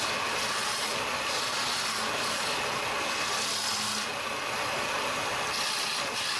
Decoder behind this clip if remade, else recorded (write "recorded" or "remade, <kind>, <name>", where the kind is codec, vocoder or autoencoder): recorded